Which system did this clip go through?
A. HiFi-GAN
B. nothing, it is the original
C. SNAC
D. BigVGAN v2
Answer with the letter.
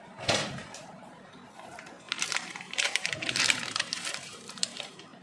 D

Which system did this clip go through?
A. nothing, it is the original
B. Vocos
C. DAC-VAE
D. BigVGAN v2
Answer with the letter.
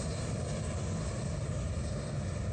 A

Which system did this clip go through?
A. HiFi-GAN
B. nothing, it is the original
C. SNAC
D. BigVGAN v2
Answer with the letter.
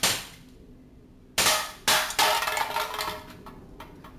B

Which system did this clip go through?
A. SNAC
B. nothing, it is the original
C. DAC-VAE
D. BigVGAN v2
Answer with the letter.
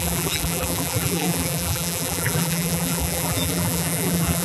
D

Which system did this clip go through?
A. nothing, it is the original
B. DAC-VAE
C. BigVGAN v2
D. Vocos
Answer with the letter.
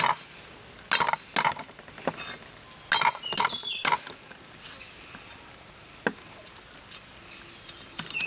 A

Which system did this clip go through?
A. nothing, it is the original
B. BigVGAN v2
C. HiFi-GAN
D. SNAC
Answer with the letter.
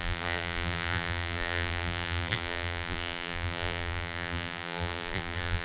B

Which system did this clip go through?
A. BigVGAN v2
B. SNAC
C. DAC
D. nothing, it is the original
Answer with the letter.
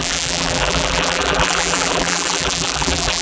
A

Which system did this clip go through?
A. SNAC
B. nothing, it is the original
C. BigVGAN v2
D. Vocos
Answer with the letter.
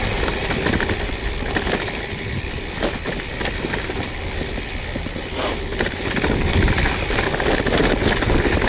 B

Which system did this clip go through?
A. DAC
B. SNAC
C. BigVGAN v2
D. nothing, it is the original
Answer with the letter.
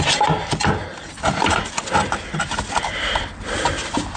D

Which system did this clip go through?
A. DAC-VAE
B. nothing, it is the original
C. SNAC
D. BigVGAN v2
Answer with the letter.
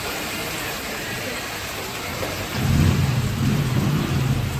D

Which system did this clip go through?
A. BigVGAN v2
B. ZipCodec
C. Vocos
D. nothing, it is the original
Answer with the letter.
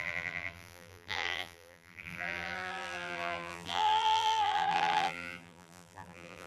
A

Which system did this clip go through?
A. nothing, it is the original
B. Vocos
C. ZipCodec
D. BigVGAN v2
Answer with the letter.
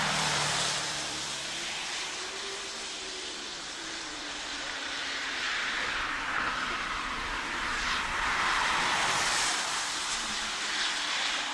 D